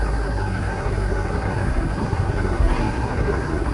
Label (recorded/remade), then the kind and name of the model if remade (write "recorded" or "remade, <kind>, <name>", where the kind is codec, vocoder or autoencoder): remade, codec, SNAC